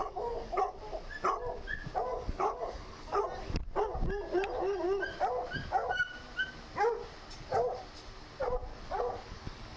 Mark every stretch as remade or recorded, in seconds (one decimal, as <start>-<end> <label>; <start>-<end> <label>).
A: 0.0-0.6 remade; 0.6-2.1 recorded; 2.1-3.2 remade; 3.2-8.7 recorded; 8.7-9.8 remade